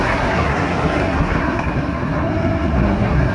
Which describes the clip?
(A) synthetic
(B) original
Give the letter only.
A